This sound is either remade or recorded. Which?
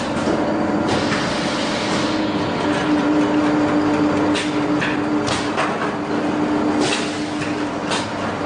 recorded